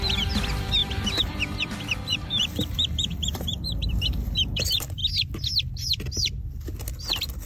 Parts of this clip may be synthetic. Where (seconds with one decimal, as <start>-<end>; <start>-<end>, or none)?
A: 0.0-5.0; 5.7-7.5